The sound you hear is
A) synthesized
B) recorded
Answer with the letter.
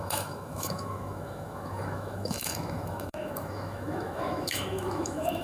A